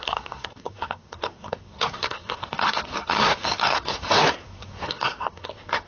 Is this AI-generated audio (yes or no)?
yes